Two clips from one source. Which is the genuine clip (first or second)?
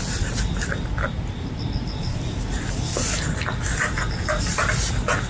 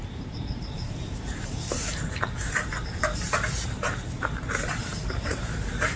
first